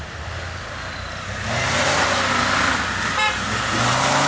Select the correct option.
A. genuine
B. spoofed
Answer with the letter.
A